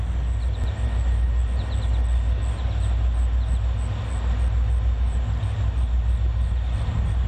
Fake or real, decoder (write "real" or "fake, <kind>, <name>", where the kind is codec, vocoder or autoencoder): real